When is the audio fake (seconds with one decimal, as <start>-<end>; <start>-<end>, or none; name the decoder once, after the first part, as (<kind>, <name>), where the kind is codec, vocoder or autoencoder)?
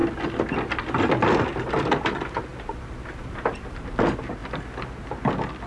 none